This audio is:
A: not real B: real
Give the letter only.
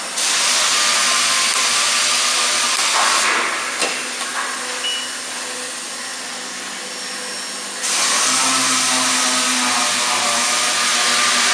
B